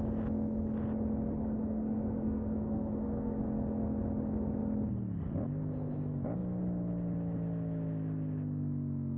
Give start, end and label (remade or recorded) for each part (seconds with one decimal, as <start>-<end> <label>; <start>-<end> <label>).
0.0-1.4 recorded; 1.4-3.4 remade; 3.4-9.2 recorded